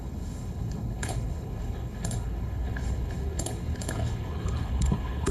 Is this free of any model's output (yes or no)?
no